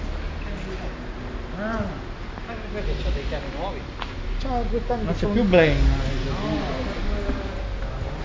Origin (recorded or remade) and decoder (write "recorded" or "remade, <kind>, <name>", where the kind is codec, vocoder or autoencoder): recorded